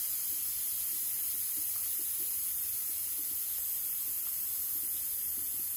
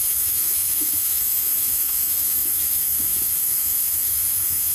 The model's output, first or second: second